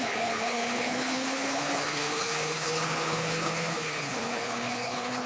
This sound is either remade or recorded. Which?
remade